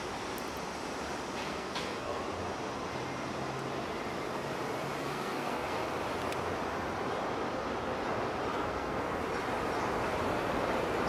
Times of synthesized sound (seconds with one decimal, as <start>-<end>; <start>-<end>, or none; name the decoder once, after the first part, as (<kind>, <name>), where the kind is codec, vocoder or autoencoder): 1.4-2.2 (codec, SNAC); 5.0-5.9; 8.5-9.2